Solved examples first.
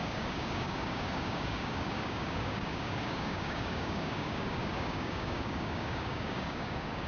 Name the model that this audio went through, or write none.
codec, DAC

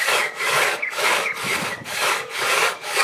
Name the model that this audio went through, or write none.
codec, DAC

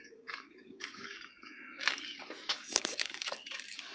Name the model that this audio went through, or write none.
codec, DAC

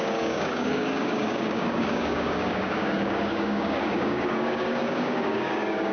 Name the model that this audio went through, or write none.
codec, DAC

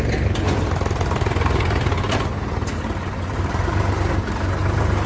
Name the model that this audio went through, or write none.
none